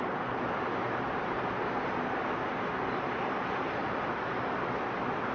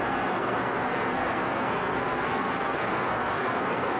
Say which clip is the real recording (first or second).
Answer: first